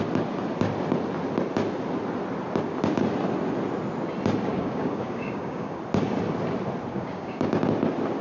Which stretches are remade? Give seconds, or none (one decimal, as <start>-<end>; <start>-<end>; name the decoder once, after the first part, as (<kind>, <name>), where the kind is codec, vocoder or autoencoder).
4.5-5.8 (codec, DAC); 6.9-7.5